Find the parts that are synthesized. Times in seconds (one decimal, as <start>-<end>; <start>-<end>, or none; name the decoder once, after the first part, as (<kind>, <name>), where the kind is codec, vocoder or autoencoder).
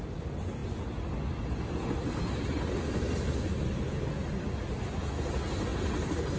none